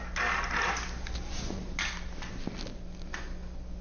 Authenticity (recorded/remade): recorded